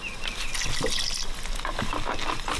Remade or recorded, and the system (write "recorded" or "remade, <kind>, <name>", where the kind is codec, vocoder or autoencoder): recorded